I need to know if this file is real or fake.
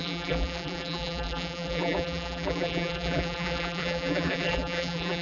fake